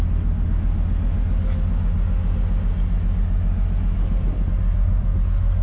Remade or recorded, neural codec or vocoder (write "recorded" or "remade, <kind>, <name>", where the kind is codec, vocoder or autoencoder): recorded